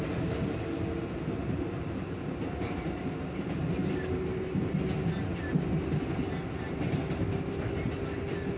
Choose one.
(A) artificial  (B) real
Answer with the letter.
B